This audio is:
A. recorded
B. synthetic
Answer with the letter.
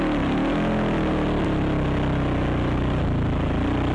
A